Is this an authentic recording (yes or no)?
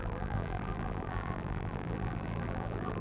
no